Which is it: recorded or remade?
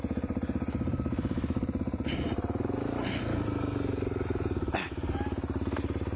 recorded